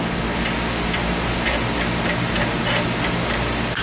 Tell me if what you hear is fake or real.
real